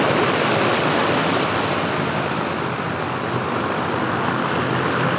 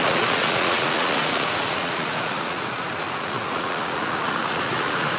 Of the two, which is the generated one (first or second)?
second